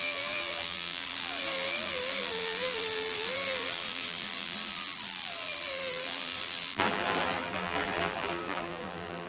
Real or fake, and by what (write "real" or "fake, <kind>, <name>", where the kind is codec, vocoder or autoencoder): fake, vocoder, BigVGAN v2